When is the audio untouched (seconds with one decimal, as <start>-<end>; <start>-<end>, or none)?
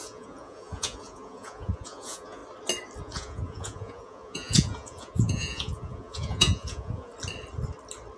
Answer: 2.4-3.0; 7.1-8.2